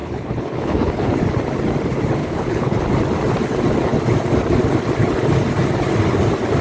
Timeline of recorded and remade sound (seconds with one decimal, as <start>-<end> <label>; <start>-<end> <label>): 0.0-1.1 remade; 1.1-2.2 recorded; 2.2-2.8 remade; 2.8-6.6 recorded